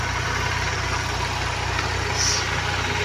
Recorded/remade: recorded